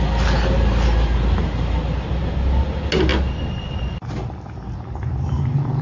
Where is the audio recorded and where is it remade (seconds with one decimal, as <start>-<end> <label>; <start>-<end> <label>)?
0.0-5.8 recorded